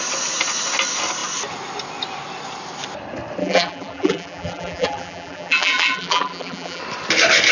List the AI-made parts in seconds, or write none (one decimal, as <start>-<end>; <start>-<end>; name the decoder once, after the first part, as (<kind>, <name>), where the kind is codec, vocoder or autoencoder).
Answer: 3.4-6.8 (vocoder, BigVGAN v2)